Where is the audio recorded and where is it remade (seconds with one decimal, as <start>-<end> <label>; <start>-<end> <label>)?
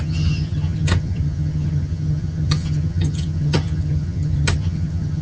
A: 0.0-5.2 remade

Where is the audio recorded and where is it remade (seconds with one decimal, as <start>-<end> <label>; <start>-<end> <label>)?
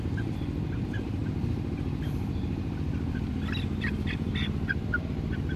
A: 0.0-1.2 remade; 1.2-2.0 recorded; 2.0-5.6 remade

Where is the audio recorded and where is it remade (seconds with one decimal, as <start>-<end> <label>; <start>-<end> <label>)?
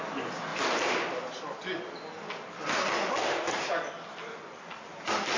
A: 0.0-5.4 recorded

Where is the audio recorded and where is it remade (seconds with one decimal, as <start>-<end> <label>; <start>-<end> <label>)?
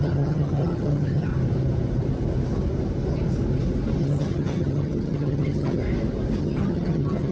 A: 0.0-1.3 remade; 1.3-4.0 recorded; 4.0-5.8 remade; 5.8-6.4 recorded; 6.4-7.3 remade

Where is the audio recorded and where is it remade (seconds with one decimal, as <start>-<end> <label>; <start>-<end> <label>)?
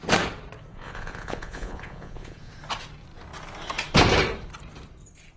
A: 0.0-0.7 recorded; 0.7-2.5 remade; 2.5-5.4 recorded